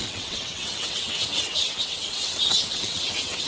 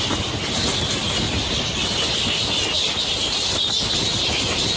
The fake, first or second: first